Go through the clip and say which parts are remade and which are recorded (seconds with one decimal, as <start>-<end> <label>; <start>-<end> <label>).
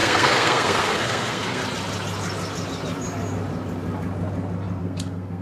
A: 0.0-1.6 remade; 1.6-4.8 recorded; 4.8-5.4 remade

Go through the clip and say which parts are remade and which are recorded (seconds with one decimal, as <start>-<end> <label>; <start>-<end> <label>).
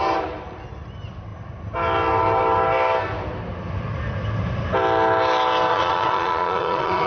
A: 0.0-5.7 recorded; 5.7-7.1 remade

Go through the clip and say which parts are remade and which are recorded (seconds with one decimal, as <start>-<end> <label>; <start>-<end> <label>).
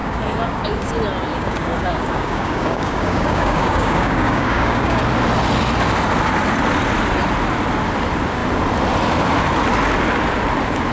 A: 0.0-0.9 remade; 0.9-1.3 recorded; 1.3-5.0 remade; 5.0-10.9 recorded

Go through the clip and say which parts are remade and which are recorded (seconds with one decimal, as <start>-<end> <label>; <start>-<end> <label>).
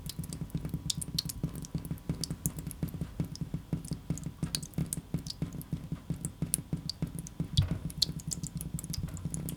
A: 0.0-9.6 recorded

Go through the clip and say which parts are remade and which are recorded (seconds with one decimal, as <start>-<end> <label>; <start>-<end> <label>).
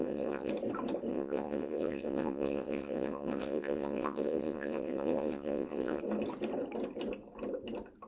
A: 0.0-0.5 remade; 0.5-1.1 recorded; 1.1-6.0 remade; 6.0-8.1 recorded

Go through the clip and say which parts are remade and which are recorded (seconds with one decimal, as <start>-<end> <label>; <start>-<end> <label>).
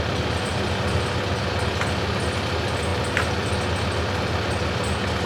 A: 0.0-5.3 recorded